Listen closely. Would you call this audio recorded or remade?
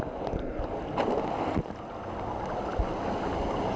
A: recorded